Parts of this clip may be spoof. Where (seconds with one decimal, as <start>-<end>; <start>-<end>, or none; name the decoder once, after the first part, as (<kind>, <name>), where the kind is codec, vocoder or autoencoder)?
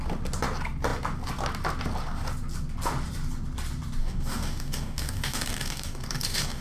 4.0-6.6 (codec, DAC)